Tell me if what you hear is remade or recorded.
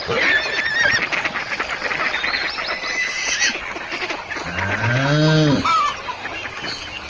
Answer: recorded